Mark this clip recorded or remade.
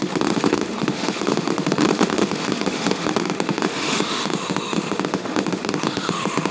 remade